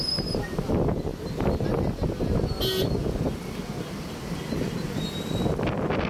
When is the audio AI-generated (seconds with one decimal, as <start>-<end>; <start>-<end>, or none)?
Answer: 1.1-1.8